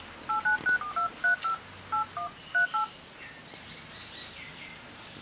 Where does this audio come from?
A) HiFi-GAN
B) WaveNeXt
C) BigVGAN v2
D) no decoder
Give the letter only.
D